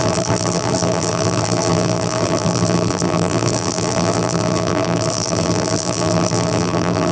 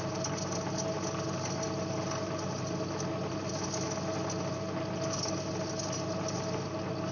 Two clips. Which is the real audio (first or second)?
second